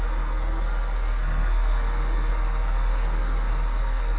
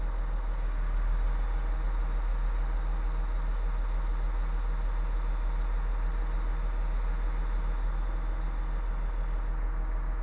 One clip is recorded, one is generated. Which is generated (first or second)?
first